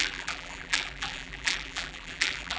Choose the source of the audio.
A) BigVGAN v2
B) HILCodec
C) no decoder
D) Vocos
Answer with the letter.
A